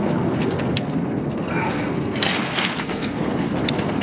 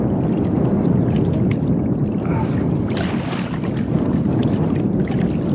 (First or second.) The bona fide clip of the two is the second